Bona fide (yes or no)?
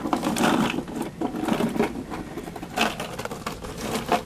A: yes